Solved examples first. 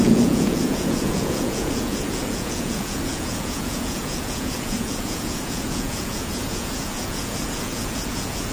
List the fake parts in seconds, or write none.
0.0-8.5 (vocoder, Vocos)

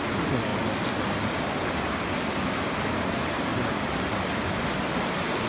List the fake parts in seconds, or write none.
none

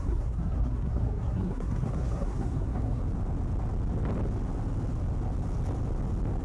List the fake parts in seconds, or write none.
0.0-3.0 (codec, SNAC)

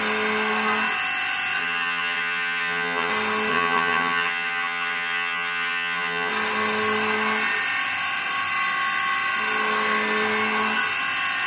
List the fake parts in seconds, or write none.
1.6-3.1 (vocoder, HiFi-GAN); 3.5-6.3

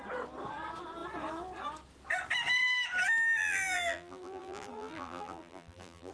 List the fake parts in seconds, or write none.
3.4-6.1 (vocoder, BigVGAN v2)

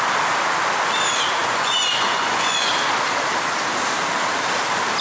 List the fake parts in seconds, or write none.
1.4-2.7 (vocoder, Vocos)